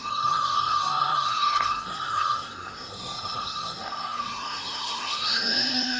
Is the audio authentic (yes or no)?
no